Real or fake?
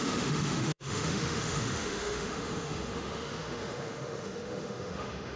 fake